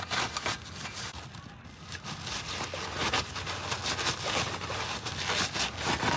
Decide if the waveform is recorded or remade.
recorded